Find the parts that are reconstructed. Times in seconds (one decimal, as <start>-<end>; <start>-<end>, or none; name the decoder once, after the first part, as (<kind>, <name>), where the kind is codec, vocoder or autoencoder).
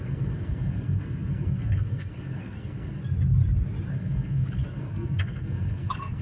0.0-3.0 (codec, SNAC); 3.9-6.2